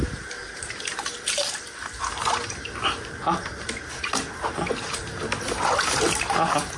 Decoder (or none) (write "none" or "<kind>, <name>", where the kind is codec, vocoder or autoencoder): none